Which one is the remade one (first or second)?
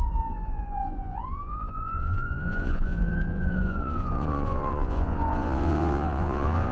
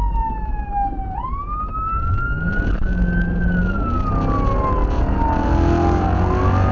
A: first